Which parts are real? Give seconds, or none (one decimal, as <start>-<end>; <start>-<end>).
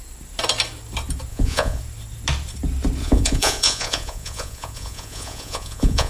0.0-1.3; 1.8-3.0